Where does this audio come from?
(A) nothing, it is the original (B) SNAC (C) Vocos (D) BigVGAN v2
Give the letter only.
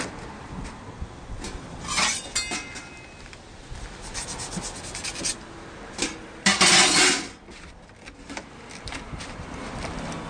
A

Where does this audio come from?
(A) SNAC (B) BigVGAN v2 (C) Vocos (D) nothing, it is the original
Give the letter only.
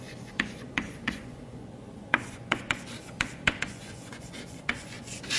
C